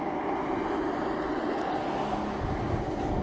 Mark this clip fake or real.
real